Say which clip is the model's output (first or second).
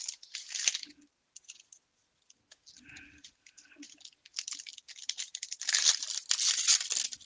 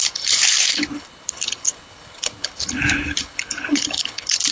second